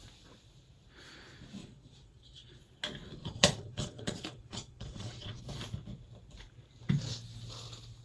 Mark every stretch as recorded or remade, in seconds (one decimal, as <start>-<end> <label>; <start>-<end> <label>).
0.0-1.6 recorded; 1.6-2.6 remade; 2.6-3.2 recorded; 3.2-5.4 remade; 5.4-8.0 recorded